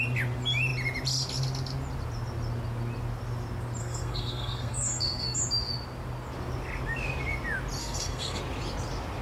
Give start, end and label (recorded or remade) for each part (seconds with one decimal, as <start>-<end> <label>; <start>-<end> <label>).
0.0-3.8 recorded; 3.8-5.4 remade; 5.4-7.8 recorded; 7.8-8.4 remade; 8.4-9.2 recorded